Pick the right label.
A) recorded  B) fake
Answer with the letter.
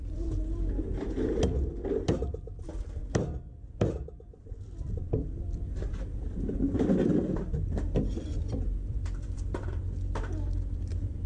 B